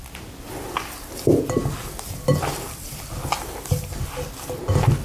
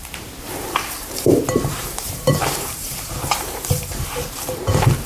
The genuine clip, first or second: first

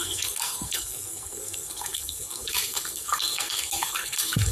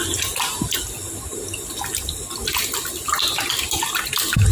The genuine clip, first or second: second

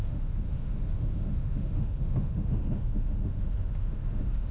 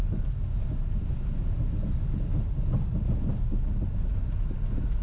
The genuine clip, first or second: second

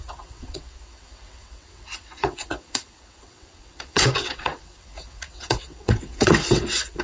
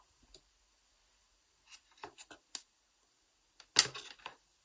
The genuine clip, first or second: second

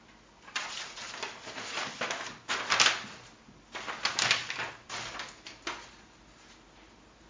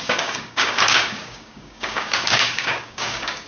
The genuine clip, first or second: first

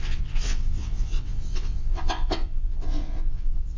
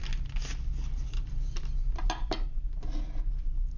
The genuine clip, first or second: second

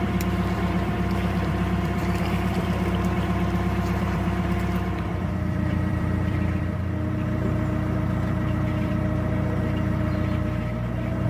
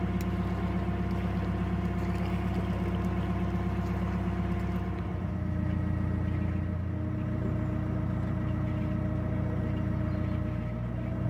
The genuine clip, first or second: second